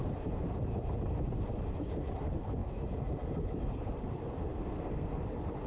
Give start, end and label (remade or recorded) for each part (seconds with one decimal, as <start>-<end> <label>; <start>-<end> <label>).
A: 0.0-4.5 recorded; 4.5-5.2 remade; 5.2-5.7 recorded